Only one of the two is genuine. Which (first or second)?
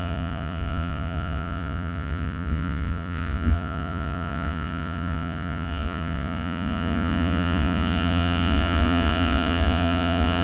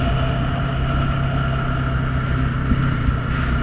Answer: second